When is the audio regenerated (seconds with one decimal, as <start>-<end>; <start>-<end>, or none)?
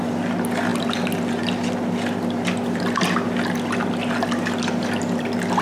none